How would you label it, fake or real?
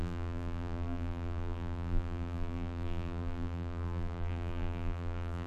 fake